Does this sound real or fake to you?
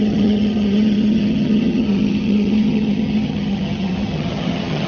fake